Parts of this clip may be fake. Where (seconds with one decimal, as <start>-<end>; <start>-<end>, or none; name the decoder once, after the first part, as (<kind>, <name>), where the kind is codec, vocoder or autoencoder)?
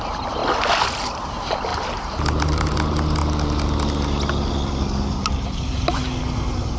0.0-0.4 (vocoder, BigVGAN v2); 1.0-3.2; 5.1-6.0